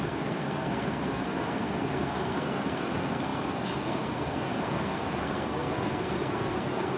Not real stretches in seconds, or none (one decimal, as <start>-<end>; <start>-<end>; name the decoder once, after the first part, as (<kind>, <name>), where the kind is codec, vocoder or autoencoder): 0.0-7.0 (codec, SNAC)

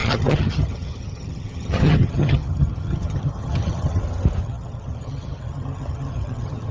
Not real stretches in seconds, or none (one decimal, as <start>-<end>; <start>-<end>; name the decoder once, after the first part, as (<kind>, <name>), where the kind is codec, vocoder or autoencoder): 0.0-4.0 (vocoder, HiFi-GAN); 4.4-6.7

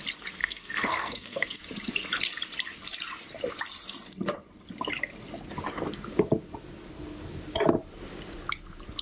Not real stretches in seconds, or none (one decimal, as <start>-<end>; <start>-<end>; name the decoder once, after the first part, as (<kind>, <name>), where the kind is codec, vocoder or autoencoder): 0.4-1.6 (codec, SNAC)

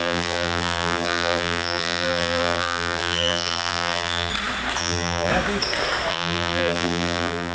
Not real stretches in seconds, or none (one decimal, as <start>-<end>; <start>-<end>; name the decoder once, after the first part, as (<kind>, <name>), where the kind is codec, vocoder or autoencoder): 0.0-4.3 (vocoder, BigVGAN v2); 4.8-5.3; 6.1-7.5

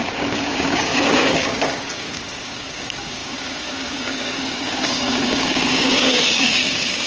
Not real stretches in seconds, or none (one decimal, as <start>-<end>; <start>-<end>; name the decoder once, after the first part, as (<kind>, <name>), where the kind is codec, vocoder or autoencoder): 0.0-7.1 (codec, DAC)